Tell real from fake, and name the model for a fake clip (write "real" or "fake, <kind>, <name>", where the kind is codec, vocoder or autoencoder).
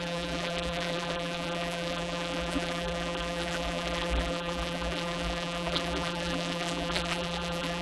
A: fake, vocoder, BigVGAN v2